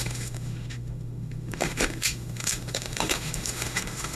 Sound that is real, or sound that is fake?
fake